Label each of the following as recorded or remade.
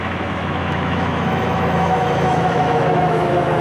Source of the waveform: remade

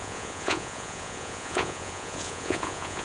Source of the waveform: remade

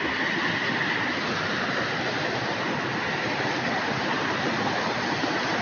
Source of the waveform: recorded